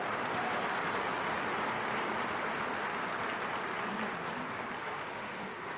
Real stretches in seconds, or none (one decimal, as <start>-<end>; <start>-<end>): 0.0-4.8